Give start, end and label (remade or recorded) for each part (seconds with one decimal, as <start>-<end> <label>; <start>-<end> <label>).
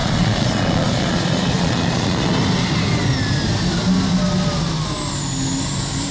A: 0.0-2.3 remade; 2.3-6.1 recorded